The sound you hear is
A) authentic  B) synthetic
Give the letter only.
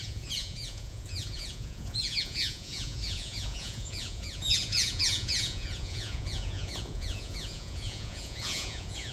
B